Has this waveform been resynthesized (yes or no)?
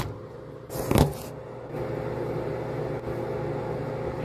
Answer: no